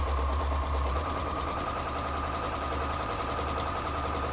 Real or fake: fake